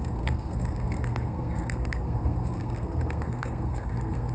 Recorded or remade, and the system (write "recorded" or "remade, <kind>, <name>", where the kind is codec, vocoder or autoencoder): remade, codec, SNAC